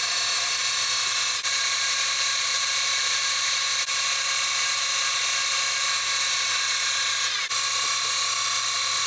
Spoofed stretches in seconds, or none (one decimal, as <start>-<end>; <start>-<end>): none